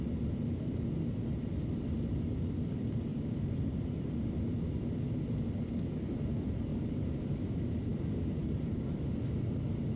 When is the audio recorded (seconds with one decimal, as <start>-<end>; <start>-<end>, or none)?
0.0-3.1; 3.8-6.7; 7.4-10.0